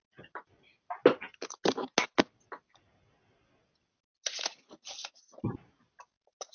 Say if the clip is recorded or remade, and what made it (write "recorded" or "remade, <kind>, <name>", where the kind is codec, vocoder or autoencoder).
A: recorded